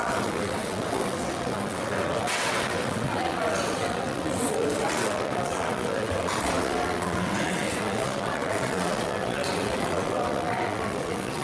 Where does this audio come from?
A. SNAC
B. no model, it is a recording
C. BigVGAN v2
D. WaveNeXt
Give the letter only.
D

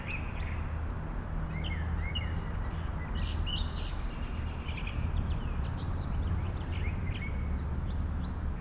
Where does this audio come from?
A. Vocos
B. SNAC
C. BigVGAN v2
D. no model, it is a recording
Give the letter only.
D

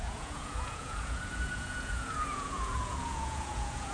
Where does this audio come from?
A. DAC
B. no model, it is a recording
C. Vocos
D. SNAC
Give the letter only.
C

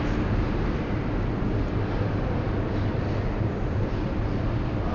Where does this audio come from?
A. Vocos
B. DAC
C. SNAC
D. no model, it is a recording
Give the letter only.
D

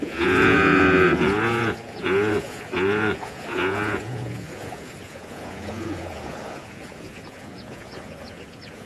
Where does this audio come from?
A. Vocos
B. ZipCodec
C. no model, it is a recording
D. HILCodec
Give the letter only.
A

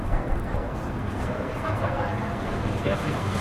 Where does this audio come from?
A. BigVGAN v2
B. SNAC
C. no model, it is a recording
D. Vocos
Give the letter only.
B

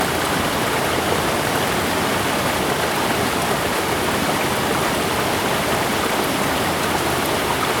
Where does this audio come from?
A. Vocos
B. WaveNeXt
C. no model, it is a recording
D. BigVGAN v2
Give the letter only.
C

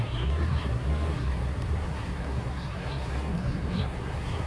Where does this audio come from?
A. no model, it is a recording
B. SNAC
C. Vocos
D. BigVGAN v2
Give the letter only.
B